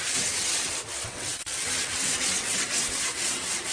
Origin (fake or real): fake